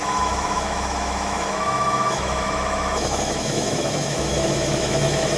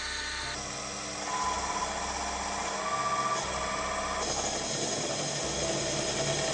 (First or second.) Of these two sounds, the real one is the second